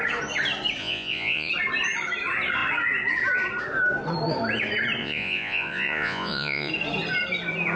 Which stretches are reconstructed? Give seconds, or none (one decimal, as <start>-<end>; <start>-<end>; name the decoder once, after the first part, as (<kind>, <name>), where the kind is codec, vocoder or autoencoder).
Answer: 0.8-1.5 (vocoder, Vocos); 5.0-6.7